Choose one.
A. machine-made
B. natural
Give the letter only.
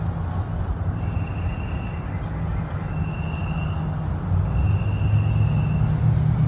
B